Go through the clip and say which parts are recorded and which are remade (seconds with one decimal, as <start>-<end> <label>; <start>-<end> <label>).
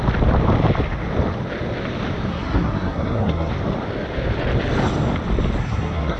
0.0-2.3 recorded; 2.3-3.5 remade; 3.5-5.6 recorded; 5.6-6.2 remade